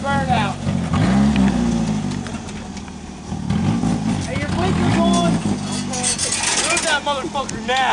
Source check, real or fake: real